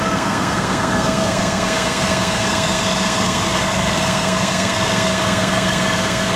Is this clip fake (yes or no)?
yes